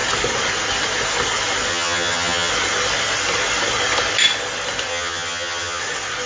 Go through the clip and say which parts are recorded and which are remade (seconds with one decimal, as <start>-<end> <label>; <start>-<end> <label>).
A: 0.0-1.7 recorded; 1.7-2.5 remade; 2.5-4.9 recorded; 4.9-5.8 remade; 5.8-6.3 recorded

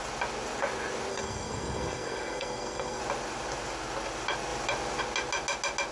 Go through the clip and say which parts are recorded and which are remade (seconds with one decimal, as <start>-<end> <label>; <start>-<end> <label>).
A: 0.0-1.1 recorded; 1.1-3.0 remade; 3.0-5.9 recorded

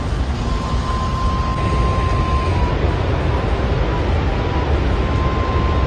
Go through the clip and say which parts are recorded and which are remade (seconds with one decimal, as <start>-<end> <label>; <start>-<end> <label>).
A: 0.0-5.9 recorded